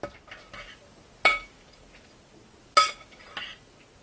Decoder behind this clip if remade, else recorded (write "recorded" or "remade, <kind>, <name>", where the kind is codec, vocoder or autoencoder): recorded